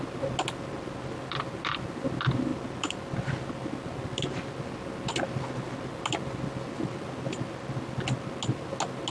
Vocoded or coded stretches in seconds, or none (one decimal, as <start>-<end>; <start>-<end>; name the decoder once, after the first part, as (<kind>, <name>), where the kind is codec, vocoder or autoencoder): none